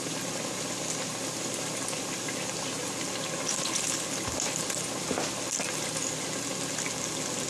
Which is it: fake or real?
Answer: real